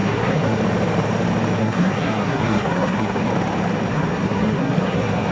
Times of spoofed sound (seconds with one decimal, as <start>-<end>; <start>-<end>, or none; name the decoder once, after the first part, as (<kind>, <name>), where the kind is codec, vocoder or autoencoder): 0.0-0.6 (codec, SNAC); 1.6-3.3; 3.9-5.3